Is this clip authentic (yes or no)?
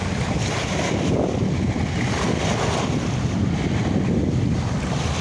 yes